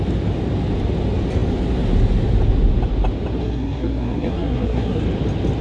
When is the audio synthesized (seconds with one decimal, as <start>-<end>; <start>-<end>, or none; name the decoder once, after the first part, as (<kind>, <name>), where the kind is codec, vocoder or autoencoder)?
3.4-5.0 (codec, SNAC)